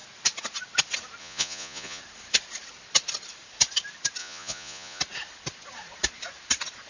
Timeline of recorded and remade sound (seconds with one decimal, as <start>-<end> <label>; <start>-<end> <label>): 0.0-1.2 recorded; 1.2-2.0 remade; 2.0-4.2 recorded; 4.2-5.0 remade; 5.0-6.9 recorded